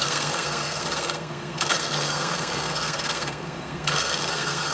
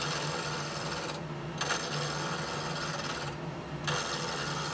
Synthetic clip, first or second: first